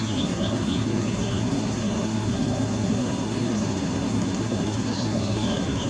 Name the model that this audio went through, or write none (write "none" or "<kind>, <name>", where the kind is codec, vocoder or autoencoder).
codec, SNAC